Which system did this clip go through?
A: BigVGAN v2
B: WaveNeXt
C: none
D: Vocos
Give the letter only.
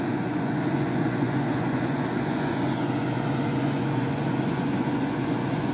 D